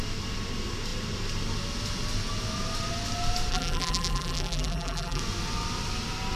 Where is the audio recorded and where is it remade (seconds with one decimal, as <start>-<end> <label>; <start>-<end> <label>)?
0.0-3.5 recorded; 3.5-5.2 remade; 5.2-6.4 recorded